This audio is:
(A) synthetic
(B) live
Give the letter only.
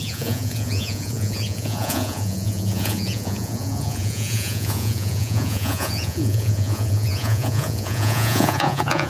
A